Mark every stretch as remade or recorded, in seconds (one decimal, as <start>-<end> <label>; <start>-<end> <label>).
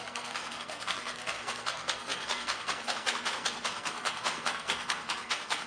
0.0-5.7 remade